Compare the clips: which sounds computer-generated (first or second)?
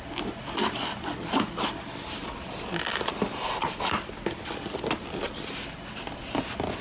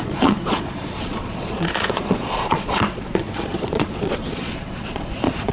second